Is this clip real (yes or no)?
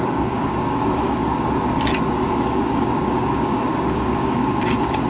no